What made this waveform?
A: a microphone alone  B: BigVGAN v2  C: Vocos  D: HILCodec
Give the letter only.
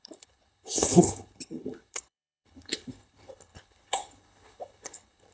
D